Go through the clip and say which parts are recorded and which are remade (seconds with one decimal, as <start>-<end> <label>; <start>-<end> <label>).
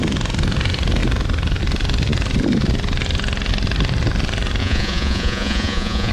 0.0-4.6 recorded; 4.6-6.1 remade